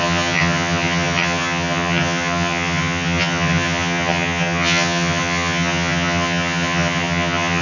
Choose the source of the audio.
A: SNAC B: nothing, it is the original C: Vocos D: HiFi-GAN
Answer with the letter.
D